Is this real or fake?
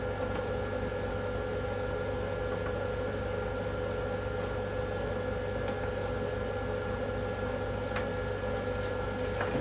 real